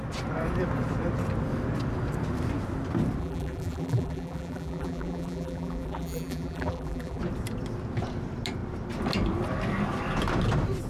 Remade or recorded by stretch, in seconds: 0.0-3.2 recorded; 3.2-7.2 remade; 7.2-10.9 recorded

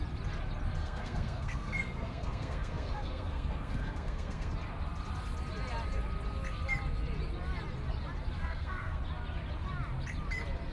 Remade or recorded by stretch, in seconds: 0.0-0.8 recorded; 0.8-4.5 remade; 4.5-8.4 recorded; 8.4-9.0 remade; 9.0-10.7 recorded

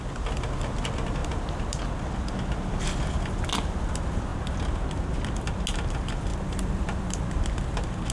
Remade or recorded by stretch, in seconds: 0.0-1.2 recorded; 1.2-1.9 remade; 1.9-6.3 recorded; 6.3-7.3 remade; 7.3-8.1 recorded

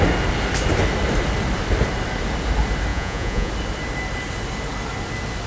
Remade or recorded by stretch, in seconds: 0.0-2.9 recorded; 2.9-3.5 remade; 3.5-5.5 recorded

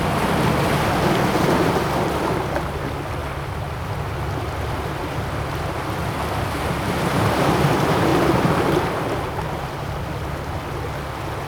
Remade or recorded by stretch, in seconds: 0.0-8.1 recorded; 8.1-9.0 remade; 9.0-11.5 recorded

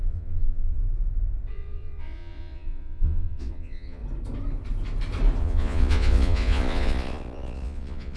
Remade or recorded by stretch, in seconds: 0.0-0.8 remade; 0.8-1.5 recorded; 1.5-4.0 remade; 4.0-5.4 recorded; 5.4-8.2 remade